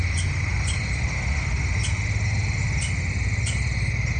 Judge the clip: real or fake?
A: real